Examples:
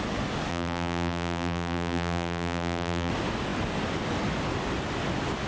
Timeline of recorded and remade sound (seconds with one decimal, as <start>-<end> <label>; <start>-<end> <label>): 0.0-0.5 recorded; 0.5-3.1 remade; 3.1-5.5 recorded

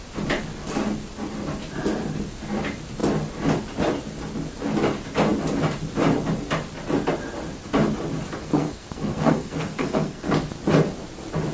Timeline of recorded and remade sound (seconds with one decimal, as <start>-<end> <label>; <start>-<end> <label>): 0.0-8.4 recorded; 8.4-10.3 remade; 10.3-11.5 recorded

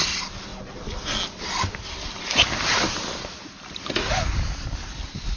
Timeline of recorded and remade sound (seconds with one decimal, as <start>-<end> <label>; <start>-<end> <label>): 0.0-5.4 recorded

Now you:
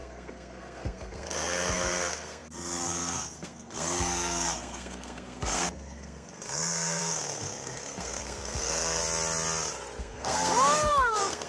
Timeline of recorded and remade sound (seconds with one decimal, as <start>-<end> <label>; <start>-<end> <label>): 0.0-9.0 remade; 9.0-10.0 recorded; 10.0-11.5 remade